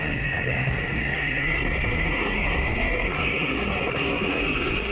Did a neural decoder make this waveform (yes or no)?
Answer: yes